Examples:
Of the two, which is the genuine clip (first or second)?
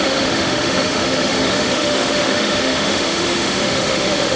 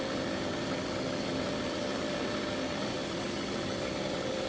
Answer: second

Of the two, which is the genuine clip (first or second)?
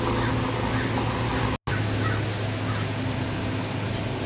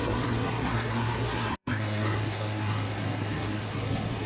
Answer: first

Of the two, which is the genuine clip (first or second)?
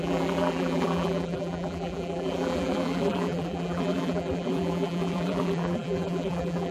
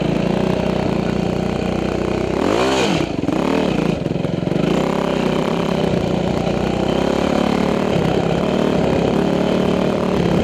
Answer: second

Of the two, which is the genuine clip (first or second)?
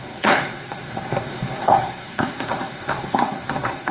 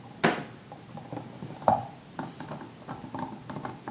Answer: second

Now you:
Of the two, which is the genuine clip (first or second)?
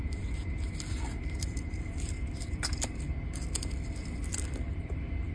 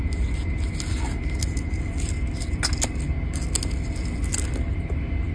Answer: second